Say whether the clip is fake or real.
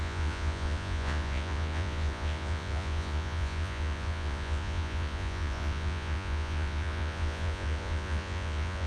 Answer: fake